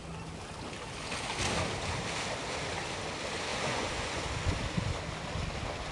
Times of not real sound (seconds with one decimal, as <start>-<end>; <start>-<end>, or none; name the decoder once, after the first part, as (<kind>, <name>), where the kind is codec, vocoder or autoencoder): 3.5-4.2 (vocoder, Vocos)